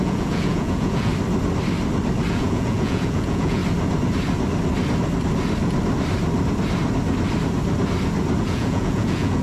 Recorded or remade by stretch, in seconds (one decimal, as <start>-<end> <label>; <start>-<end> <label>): 0.0-1.1 remade; 1.1-2.3 recorded; 2.3-3.6 remade; 3.6-8.4 recorded; 8.4-9.4 remade